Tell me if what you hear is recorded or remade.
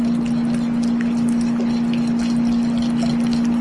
recorded